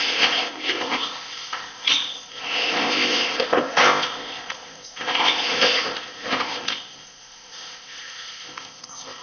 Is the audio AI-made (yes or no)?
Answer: yes